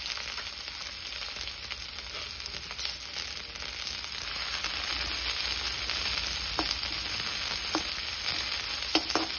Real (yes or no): yes